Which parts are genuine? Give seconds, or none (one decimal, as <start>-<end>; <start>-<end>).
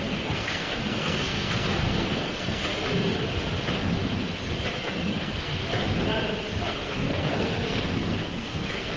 2.6-4.8; 5.6-6.6